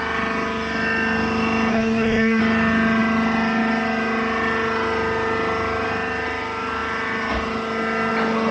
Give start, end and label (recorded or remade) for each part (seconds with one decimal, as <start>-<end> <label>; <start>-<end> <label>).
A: 0.0-1.7 recorded; 1.7-2.4 remade; 2.4-8.5 recorded

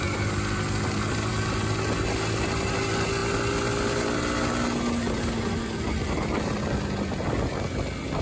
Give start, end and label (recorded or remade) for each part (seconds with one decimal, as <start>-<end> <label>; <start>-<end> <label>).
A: 0.0-8.2 recorded

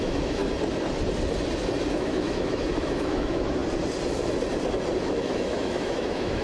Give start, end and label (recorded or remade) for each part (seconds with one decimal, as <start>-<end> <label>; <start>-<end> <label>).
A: 0.0-0.4 remade; 0.4-1.9 recorded; 1.9-3.6 remade; 3.6-5.0 recorded; 5.0-6.4 remade

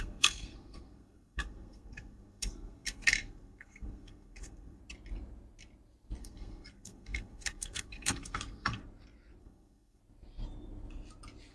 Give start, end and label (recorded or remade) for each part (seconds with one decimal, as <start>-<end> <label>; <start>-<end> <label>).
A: 0.0-4.8 remade; 4.8-6.2 recorded; 6.2-8.8 remade; 8.8-9.4 recorded; 9.4-10.0 remade; 10.0-11.5 recorded

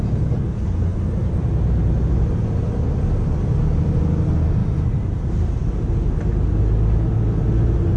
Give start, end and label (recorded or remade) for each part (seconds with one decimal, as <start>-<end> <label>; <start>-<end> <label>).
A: 0.0-4.6 recorded; 4.6-5.6 remade; 5.6-8.0 recorded

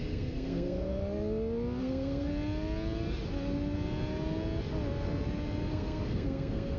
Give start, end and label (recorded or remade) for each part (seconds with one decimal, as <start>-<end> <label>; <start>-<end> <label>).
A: 0.0-1.0 remade; 1.0-1.8 recorded; 1.8-2.3 remade; 2.3-5.7 recorded; 5.7-6.8 remade

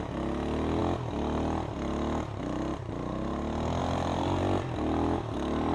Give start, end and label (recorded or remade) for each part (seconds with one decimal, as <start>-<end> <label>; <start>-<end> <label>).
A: 0.0-3.8 recorded; 3.8-4.4 remade; 4.4-5.7 recorded